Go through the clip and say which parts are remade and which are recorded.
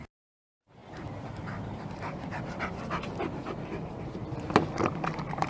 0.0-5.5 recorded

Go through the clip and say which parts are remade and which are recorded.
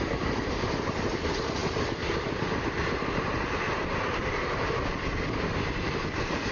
0.0-6.5 recorded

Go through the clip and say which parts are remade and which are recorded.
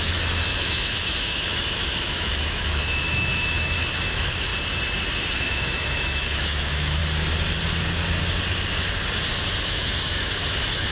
0.0-4.5 remade; 4.5-5.3 recorded; 5.3-7.0 remade; 7.0-9.6 recorded; 9.6-10.9 remade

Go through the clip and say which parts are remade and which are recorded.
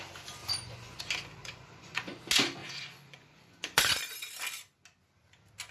0.0-0.4 recorded; 0.4-1.0 remade; 1.0-1.4 recorded; 1.4-2.2 remade; 2.2-2.6 recorded; 2.6-4.0 remade; 4.0-5.7 recorded